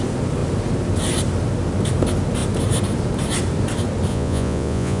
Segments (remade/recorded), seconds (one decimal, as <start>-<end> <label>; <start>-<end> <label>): 0.0-4.1 recorded; 4.1-5.0 remade